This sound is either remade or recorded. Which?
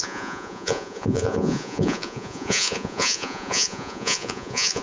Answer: remade